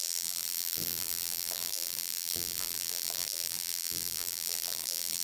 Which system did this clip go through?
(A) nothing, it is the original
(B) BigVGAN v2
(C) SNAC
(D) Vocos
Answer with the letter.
B